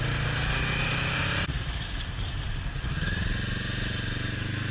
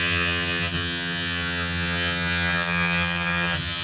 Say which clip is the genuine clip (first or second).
first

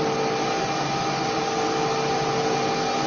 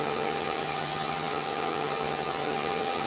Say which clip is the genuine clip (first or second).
first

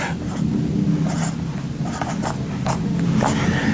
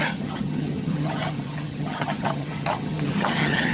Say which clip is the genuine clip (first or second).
first